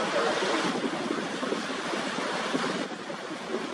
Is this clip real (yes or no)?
yes